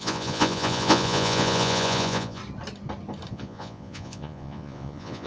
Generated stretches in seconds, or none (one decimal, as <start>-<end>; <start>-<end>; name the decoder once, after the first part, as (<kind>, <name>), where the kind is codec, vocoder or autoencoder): 0.0-2.4 (vocoder, Vocos); 3.3-5.3